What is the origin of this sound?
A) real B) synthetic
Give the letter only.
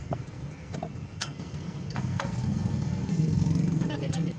B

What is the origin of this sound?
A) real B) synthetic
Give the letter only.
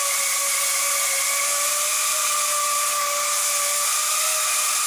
A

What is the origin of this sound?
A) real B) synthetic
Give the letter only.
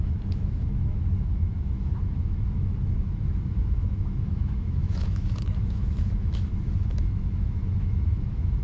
B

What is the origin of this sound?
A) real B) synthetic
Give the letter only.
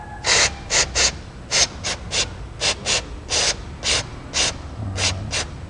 A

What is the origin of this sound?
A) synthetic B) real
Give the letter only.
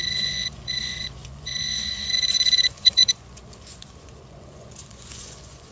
A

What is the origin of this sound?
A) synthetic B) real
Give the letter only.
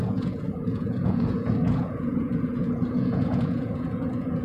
A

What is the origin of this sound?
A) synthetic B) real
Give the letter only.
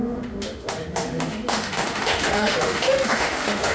A